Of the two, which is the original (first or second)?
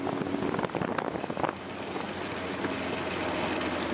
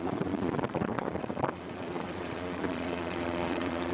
first